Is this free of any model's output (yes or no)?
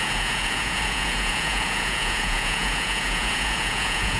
no